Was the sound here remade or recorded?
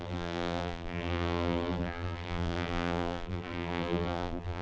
remade